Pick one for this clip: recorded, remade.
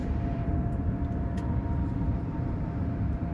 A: remade